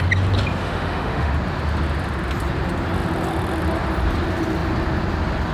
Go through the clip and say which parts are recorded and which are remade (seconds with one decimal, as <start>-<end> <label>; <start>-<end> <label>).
0.0-0.6 recorded; 0.6-1.3 remade; 1.3-5.5 recorded